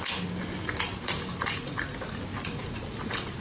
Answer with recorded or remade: recorded